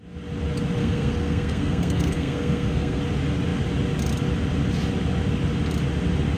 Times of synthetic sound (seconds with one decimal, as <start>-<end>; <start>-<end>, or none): 0.8-3.0